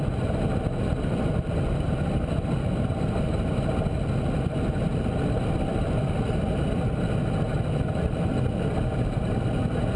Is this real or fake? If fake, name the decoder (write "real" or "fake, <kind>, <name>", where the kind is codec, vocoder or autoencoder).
real